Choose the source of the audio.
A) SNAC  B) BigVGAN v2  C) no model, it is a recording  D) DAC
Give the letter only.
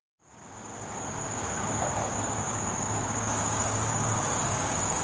D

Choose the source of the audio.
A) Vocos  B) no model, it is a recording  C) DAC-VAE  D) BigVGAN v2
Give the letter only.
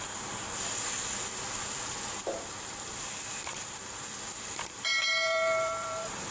D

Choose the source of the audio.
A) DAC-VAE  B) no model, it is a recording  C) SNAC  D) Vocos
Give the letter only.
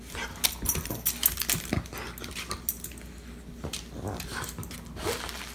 B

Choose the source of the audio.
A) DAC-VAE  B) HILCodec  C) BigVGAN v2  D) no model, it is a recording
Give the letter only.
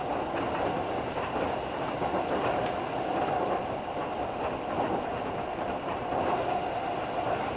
D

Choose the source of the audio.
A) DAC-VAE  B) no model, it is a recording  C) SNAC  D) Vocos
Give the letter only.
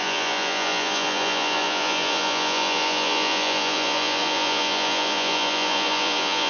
D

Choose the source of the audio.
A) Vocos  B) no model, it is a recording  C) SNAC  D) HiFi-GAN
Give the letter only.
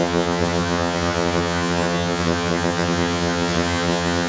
D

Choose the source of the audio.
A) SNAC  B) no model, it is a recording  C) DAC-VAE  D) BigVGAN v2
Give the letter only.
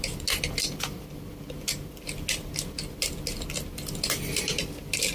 B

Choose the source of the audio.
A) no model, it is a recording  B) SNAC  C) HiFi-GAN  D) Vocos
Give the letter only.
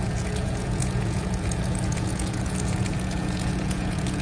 D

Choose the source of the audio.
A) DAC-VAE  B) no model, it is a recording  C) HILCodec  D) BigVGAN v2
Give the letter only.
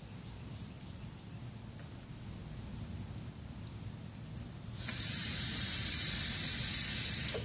B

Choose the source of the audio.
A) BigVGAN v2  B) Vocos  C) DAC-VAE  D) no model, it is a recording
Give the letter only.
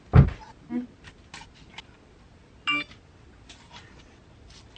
D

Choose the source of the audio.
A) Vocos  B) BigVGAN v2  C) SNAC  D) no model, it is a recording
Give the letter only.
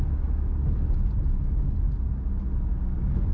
D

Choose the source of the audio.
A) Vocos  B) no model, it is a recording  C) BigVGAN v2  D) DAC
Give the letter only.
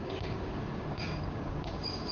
D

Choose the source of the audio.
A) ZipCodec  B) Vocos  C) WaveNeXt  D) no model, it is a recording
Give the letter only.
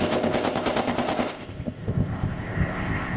A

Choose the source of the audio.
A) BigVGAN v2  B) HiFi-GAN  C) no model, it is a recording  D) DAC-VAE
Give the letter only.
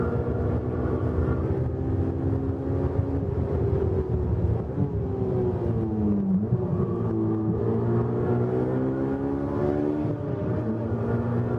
C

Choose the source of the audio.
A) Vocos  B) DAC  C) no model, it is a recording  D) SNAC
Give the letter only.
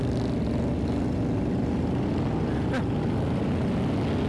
C